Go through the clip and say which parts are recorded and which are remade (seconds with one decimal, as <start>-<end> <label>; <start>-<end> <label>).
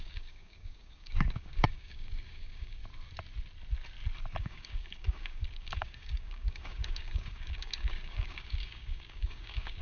0.0-2.8 remade; 2.8-4.4 recorded; 4.4-9.8 remade